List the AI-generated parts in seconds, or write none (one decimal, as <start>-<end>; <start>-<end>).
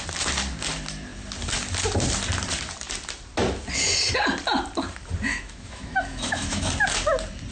5.3-6.7